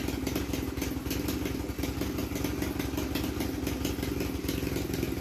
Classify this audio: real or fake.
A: real